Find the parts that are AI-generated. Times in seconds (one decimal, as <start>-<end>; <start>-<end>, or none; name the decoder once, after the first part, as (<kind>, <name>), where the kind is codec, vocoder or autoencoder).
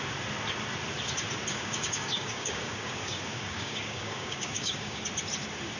1.5-5.0 (codec, DAC)